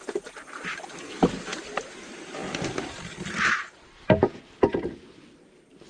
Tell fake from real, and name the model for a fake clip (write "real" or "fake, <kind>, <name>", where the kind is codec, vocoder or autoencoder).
real